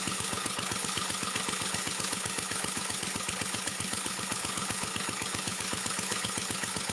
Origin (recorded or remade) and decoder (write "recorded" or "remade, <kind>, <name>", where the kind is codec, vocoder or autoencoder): remade, codec, HILCodec